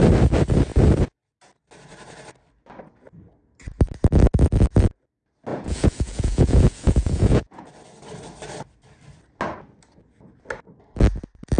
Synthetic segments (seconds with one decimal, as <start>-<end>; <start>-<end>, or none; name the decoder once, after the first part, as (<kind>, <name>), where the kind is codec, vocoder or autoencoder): 5.5-7.7 (vocoder, Vocos)